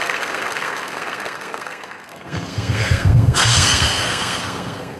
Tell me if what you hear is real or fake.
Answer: fake